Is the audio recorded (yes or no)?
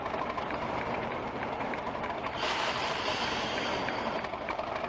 no